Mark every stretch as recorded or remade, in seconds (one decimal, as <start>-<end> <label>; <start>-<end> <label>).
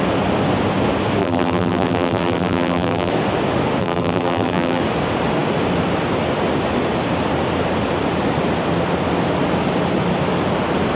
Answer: 0.0-1.2 recorded; 1.2-3.1 remade; 3.1-3.8 recorded; 3.8-4.8 remade; 4.8-11.0 recorded